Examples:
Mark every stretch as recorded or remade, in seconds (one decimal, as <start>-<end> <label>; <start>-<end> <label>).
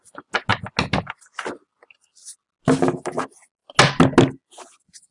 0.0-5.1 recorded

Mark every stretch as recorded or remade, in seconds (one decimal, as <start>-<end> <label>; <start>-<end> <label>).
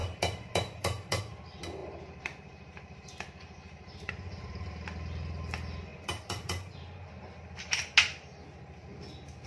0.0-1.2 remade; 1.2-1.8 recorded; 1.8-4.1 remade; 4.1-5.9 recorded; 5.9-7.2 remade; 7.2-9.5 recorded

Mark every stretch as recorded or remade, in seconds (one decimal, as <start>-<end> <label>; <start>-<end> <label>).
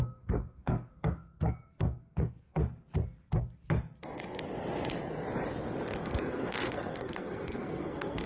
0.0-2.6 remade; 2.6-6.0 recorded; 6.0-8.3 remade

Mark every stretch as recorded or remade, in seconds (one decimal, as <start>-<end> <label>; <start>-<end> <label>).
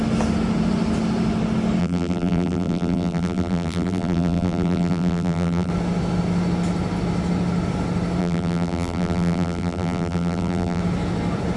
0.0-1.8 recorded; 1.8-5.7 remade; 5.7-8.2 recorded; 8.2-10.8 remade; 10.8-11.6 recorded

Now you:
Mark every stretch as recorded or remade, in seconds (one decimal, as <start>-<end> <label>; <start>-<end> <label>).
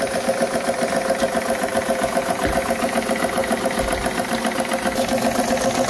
0.0-5.9 recorded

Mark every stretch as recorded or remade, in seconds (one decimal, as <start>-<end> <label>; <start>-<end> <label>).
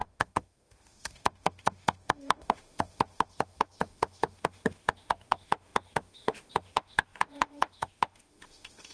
0.0-8.9 remade